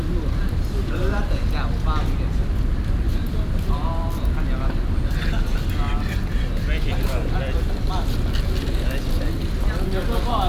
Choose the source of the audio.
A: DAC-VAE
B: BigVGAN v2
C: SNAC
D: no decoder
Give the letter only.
D